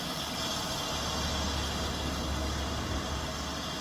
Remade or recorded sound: recorded